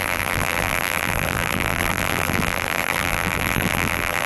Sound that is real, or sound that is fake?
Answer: fake